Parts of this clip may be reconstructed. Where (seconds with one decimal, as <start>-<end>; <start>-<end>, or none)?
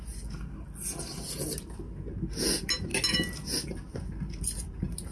none